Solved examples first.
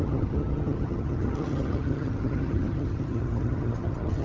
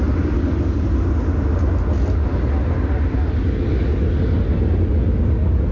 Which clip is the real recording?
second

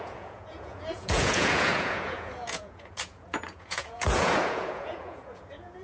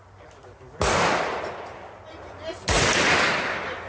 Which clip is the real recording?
second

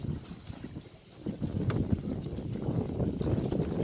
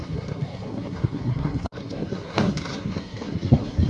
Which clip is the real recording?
first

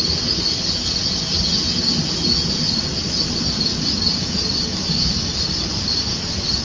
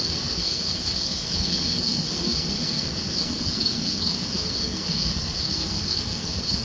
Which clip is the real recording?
first